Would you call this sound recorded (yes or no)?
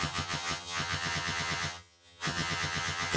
no